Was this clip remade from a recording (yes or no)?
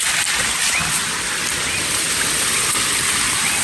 no